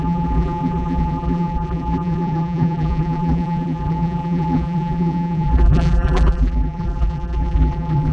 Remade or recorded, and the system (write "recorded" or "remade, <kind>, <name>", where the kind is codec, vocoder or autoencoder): remade, vocoder, BigVGAN v2